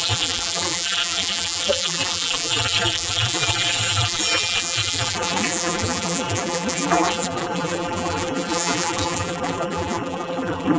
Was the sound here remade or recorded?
remade